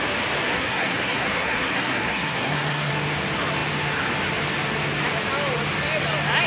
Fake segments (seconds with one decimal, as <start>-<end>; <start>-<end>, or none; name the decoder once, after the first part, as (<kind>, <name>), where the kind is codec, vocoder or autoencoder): 0.5-2.9 (codec, SNAC)